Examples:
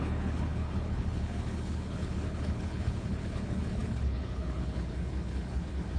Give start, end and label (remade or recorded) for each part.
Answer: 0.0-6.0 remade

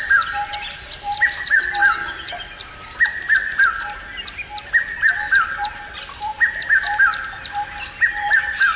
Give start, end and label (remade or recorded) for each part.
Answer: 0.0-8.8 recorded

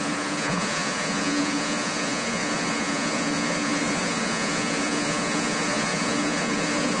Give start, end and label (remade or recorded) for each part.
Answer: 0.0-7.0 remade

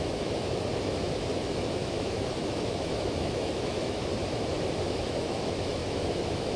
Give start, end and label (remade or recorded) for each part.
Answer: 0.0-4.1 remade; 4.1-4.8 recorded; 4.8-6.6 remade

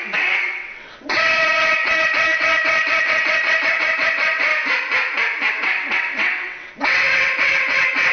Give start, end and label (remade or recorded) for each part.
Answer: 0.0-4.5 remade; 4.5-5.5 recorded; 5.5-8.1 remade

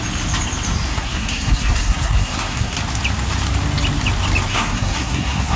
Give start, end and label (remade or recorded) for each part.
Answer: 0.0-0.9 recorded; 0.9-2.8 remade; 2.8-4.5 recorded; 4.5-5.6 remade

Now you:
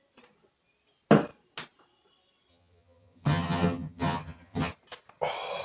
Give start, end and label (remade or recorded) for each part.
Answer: 0.0-2.5 recorded; 2.5-4.7 remade; 4.7-5.6 recorded